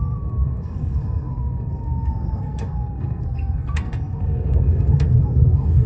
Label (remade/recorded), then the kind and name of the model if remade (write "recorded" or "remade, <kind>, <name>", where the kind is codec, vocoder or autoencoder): remade, codec, SNAC